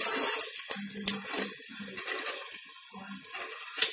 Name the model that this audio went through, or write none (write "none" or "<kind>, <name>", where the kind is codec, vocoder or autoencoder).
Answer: none